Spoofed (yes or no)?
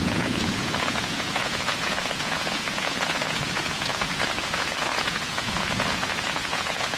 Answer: yes